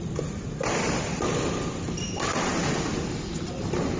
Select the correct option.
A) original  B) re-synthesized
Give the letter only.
A